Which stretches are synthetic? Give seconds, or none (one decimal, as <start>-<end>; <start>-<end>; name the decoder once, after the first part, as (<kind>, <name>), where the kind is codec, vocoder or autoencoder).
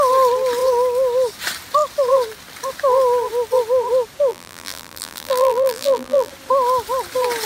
4.3-6.3 (vocoder, BigVGAN v2)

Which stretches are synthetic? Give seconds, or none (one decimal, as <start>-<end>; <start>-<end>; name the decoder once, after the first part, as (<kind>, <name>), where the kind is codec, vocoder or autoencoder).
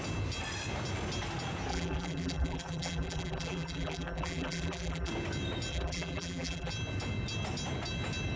1.7-5.1 (vocoder, BigVGAN v2); 5.7-6.7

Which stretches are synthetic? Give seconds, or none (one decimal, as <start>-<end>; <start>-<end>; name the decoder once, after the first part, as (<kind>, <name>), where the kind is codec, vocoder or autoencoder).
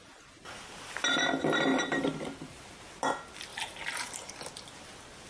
1.7-2.8 (vocoder, BigVGAN v2); 3.5-4.3